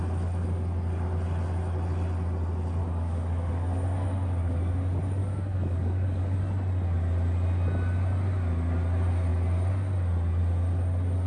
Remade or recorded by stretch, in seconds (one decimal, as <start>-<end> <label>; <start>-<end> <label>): 0.0-2.8 recorded; 2.8-3.5 remade; 3.5-5.2 recorded; 5.2-6.4 remade; 6.4-11.3 recorded